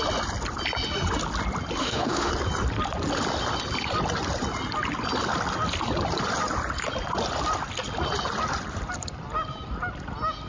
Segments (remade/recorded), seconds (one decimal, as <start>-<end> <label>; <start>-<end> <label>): 0.0-1.8 recorded; 1.8-2.3 remade; 2.3-10.5 recorded

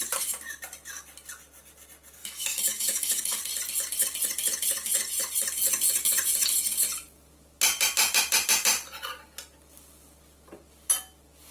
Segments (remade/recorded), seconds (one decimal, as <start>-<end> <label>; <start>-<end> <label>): 0.0-2.2 recorded; 2.2-3.4 remade; 3.4-11.5 recorded

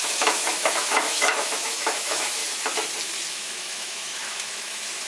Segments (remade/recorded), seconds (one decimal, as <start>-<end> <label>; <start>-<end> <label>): 0.0-2.4 remade; 2.4-3.3 recorded; 3.3-5.1 remade

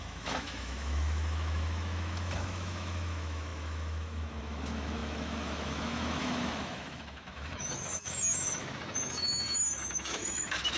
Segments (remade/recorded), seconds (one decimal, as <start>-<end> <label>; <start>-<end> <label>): 0.0-10.8 remade

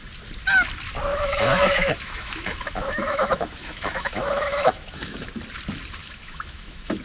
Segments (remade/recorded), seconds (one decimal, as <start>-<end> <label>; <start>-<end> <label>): 0.0-1.1 recorded; 1.1-5.3 remade; 5.3-6.0 recorded; 6.0-7.0 remade